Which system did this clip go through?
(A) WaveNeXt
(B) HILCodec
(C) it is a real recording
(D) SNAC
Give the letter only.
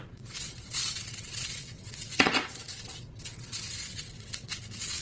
A